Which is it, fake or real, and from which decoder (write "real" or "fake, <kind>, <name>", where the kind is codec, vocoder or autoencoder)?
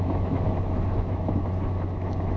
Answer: fake, autoencoder, DAC-VAE